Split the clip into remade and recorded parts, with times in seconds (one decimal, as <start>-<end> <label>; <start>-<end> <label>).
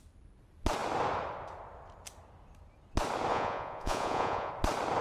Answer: 0.0-3.3 recorded; 3.3-4.5 remade; 4.5-5.0 recorded